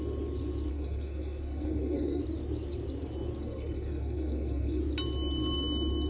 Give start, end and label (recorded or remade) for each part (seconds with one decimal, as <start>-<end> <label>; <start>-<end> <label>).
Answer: 0.0-0.7 recorded; 0.7-2.2 remade; 2.2-3.4 recorded; 3.4-4.8 remade; 4.8-6.1 recorded